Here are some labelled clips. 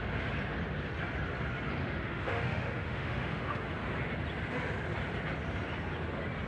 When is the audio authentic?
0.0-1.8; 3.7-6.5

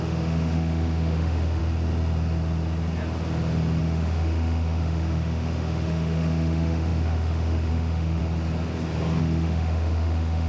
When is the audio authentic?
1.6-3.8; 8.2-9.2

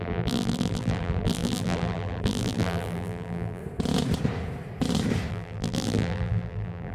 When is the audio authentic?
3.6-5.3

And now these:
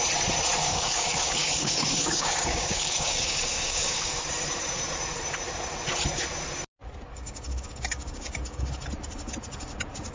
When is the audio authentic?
0.0-0.6; 4.2-7.1; 8.7-10.1

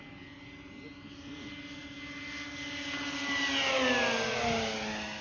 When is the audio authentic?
0.0-5.2

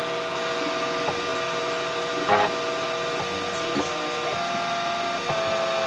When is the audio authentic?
0.0-5.9

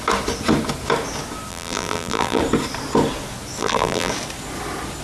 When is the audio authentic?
0.0-1.5; 2.4-3.6; 4.1-5.0